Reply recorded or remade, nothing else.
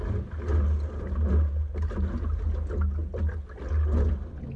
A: recorded